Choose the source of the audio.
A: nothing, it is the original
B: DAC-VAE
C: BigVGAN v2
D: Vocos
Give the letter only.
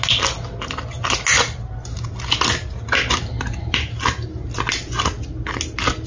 A